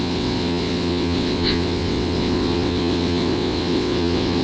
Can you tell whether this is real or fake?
fake